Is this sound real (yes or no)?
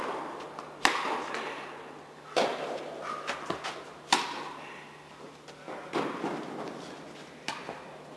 yes